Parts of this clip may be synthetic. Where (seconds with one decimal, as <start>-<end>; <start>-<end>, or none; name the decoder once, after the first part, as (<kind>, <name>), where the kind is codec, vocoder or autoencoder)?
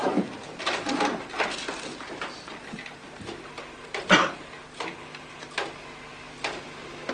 none